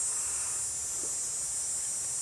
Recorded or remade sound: recorded